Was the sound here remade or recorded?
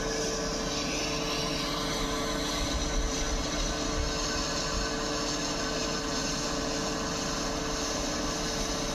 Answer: recorded